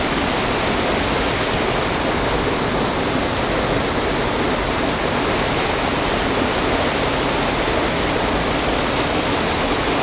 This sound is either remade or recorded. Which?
recorded